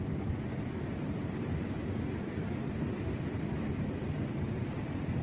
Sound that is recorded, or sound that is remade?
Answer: recorded